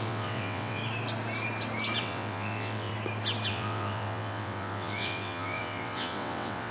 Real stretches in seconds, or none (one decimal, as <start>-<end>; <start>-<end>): 0.8-2.0; 2.9-3.5

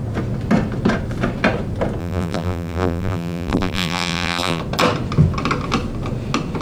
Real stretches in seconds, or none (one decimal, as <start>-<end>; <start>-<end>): 0.0-2.0; 4.6-6.6

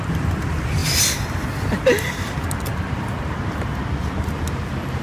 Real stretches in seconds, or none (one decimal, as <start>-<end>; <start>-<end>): 0.0-5.0

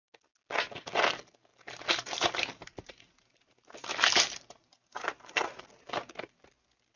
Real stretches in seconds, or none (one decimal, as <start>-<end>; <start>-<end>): 0.0-1.5; 5.6-7.0

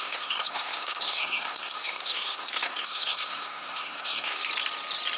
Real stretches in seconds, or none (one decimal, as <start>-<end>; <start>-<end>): 4.4-5.2

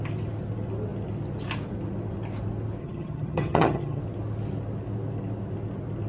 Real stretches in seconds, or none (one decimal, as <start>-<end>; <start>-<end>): 0.0-2.8; 4.0-6.1

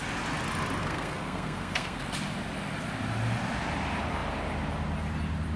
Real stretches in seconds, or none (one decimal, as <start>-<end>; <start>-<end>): 0.0-0.8; 2.0-5.6